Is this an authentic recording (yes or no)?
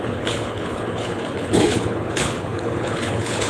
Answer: no